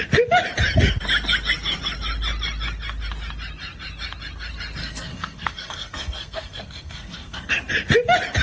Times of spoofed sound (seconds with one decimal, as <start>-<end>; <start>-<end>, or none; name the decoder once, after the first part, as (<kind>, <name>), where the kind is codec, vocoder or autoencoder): 4.8-7.5 (codec, SNAC)